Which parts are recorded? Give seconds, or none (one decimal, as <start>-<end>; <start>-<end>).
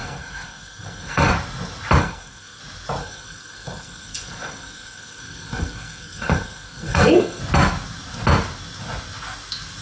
1.3-2.0; 2.6-3.0; 7.4-9.8